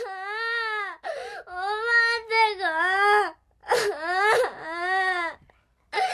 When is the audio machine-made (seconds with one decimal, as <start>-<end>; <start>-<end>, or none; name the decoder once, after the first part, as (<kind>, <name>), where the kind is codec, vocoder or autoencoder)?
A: 3.6-5.5 (vocoder, BigVGAN v2)